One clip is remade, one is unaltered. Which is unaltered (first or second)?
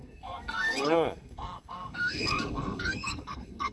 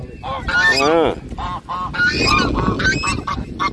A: second